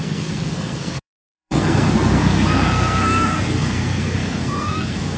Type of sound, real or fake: fake